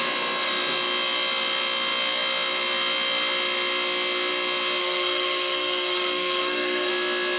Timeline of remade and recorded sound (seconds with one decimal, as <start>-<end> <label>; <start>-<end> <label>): 0.0-4.8 recorded; 4.8-6.9 remade; 6.9-7.4 recorded